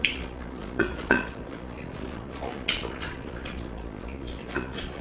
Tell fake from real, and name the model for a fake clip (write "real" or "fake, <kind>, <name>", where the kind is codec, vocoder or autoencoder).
fake, vocoder, Vocos